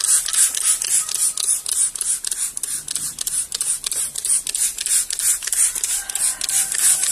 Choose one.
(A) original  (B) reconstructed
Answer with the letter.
A